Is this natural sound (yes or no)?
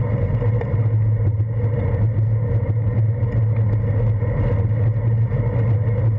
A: yes